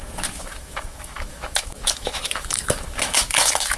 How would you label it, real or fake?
fake